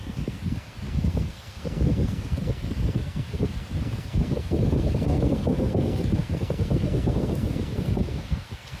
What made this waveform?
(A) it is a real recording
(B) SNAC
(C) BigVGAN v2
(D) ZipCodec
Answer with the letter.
B